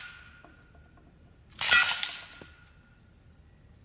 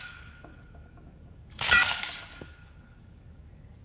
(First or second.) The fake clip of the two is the second